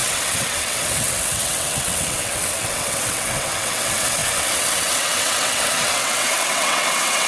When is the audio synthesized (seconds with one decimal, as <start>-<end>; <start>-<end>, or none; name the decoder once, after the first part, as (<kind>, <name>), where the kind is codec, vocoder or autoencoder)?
0.0-7.3 (vocoder, WaveNeXt)